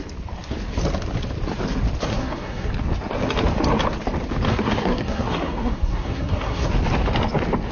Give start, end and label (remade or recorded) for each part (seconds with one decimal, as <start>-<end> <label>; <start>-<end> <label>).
0.0-2.1 recorded; 2.1-2.7 remade; 2.7-4.5 recorded; 4.5-6.7 remade; 6.7-7.7 recorded